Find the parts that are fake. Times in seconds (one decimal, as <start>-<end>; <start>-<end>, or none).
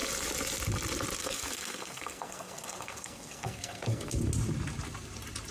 1.2-4.3